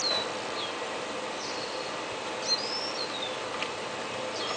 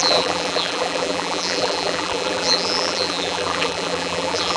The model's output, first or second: second